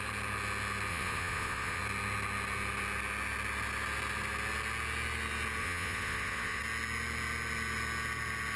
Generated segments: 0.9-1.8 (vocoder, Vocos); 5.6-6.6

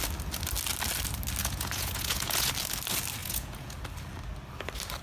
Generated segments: 1.4-2.5 (vocoder, Vocos); 3.2-3.7

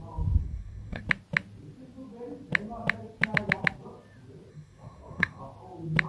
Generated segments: 0.4-1.0 (codec, SNAC); 4.5-5.4

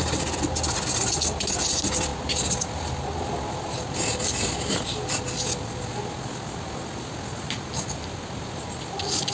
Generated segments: none

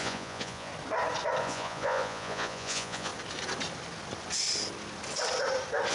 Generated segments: 0.0-0.7 (vocoder, Vocos); 1.4-3.1

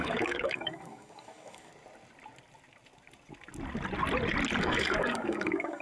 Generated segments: 0.0-1.7 (codec, DAC); 4.6-5.8